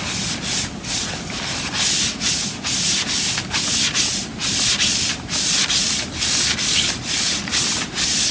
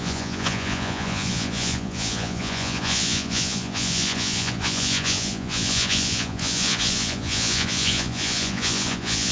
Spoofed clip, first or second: second